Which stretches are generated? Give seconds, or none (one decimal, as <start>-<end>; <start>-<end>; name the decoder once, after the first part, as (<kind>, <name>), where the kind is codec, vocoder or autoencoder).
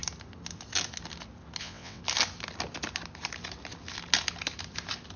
1.6-2.0 (vocoder, WaveNeXt)